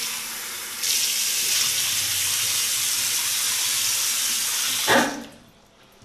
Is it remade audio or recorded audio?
recorded